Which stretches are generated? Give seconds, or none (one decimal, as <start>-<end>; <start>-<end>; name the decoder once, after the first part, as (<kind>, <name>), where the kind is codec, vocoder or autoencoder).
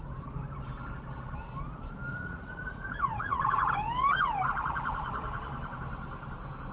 2.1-3.7 (vocoder, Vocos)